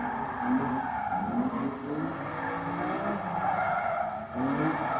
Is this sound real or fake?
real